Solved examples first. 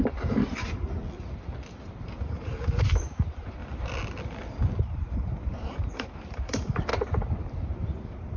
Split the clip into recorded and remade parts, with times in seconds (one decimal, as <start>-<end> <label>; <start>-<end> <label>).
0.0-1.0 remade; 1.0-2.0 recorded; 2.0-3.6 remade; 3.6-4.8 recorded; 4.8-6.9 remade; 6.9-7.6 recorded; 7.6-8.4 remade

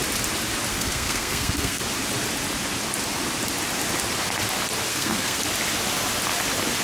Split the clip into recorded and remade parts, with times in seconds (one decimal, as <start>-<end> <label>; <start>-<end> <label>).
0.0-0.7 recorded; 0.7-1.8 remade; 1.8-4.9 recorded; 4.9-5.4 remade; 5.4-6.8 recorded

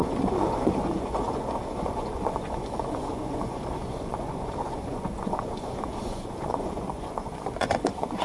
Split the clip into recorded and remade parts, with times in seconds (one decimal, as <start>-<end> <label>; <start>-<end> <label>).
0.0-8.2 remade